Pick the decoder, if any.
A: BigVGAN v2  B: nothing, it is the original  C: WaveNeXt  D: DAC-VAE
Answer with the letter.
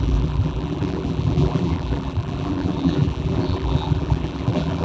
A